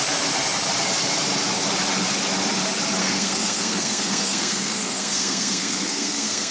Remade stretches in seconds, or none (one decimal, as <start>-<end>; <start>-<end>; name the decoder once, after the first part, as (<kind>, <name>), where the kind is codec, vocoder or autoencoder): 3.0-6.5 (codec, SNAC)